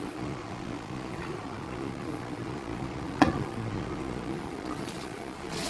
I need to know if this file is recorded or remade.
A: remade